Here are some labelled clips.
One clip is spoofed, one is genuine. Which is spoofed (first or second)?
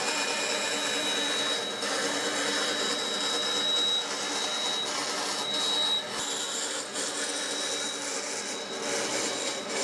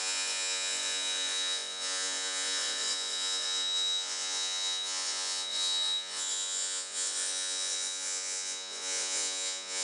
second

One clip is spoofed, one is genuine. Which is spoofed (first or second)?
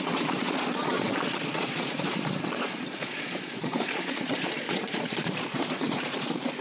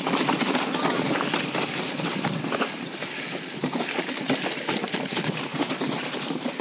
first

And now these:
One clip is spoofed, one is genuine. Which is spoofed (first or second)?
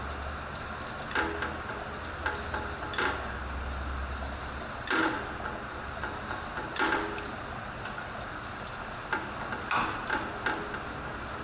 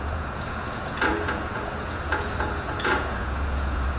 second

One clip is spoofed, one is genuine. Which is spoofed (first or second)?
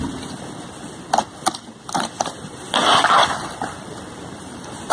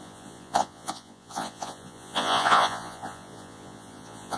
second